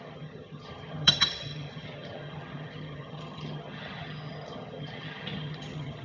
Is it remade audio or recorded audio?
remade